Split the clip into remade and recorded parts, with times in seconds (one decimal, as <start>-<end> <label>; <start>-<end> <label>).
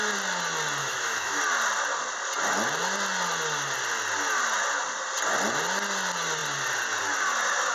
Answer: 0.0-0.8 recorded; 0.8-1.4 remade; 1.4-7.7 recorded